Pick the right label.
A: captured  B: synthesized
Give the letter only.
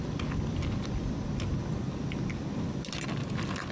A